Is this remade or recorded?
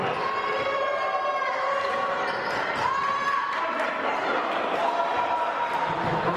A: recorded